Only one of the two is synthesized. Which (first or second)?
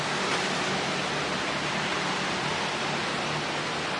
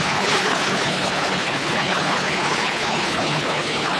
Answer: second